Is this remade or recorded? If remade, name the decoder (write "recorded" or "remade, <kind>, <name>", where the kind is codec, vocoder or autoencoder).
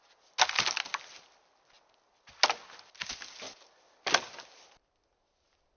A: recorded